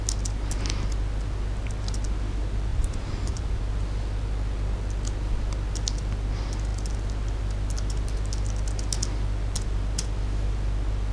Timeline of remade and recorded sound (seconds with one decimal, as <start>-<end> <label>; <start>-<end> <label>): 0.0-2.7 recorded; 2.7-3.6 remade; 3.6-11.1 recorded